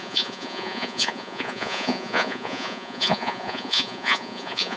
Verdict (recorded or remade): remade